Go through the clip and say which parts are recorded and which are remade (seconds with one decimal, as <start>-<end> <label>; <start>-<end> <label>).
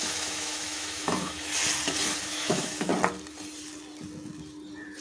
0.0-1.5 remade; 1.5-2.2 recorded; 2.2-2.9 remade; 2.9-5.0 recorded